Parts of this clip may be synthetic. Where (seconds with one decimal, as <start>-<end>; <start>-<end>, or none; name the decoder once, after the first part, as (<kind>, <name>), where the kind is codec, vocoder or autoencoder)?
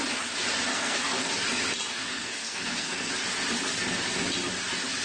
0.7-1.3 (codec, SNAC); 2.0-3.1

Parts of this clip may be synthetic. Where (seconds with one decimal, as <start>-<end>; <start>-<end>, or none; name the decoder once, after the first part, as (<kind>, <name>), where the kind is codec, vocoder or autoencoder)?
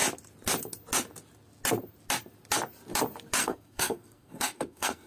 3.4-5.1 (codec, SNAC)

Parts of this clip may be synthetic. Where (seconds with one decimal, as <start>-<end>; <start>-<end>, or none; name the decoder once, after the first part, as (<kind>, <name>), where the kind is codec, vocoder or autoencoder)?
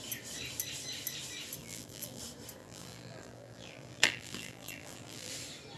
1.6-2.2 (vocoder, BigVGAN v2); 2.6-5.3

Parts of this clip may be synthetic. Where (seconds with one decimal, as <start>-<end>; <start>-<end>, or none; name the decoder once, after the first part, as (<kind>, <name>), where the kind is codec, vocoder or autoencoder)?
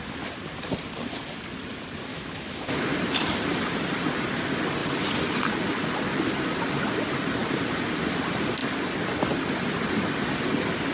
2.1-2.9 (autoencoder, DAC-VAE)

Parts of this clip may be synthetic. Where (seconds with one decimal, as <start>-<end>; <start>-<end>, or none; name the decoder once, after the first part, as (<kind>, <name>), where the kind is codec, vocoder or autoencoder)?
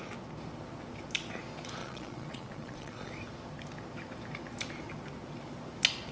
1.8-3.1 (vocoder, Vocos)